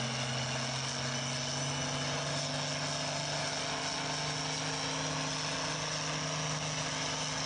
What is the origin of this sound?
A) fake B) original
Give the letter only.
B